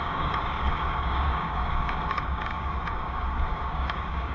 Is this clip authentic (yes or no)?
no